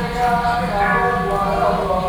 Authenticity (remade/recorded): recorded